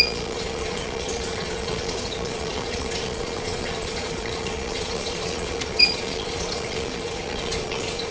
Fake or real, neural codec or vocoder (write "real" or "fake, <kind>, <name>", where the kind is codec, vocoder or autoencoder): fake, vocoder, Vocos